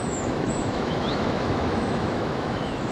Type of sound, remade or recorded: remade